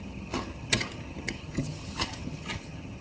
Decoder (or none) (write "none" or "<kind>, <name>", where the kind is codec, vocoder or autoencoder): vocoder, HiFi-GAN